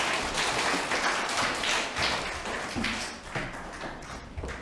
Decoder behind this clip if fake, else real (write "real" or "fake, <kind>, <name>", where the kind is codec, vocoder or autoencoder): real